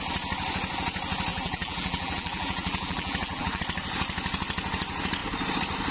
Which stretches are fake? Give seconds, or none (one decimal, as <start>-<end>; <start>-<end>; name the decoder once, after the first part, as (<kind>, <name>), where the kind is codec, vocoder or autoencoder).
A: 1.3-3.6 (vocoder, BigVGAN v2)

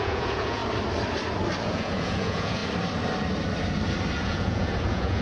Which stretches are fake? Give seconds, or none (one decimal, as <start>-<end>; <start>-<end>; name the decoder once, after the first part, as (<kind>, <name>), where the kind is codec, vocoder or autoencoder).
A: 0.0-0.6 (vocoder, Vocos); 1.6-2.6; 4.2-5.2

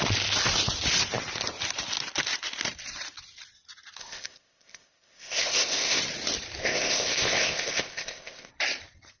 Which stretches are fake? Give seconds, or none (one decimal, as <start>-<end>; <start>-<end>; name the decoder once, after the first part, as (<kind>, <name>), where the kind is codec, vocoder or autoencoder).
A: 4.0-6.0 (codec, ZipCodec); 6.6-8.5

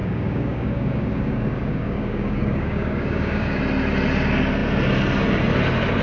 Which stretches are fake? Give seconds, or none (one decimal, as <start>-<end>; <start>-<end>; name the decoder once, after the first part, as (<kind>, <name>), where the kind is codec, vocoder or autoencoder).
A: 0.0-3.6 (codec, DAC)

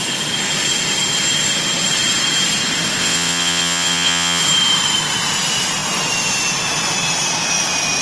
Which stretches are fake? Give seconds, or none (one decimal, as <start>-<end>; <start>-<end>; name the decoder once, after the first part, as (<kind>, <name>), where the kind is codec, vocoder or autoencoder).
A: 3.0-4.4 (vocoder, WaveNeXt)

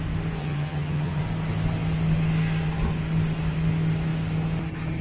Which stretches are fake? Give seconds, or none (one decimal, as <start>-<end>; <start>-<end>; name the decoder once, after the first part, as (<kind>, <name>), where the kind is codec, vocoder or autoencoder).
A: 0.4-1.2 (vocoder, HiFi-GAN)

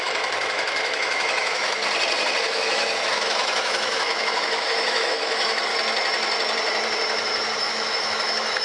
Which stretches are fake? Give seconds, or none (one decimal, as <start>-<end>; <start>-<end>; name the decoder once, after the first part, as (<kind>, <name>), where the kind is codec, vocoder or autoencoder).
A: 0.0-1.8 (autoencoder, DAC-VAE); 2.4-5.7; 7.6-8.6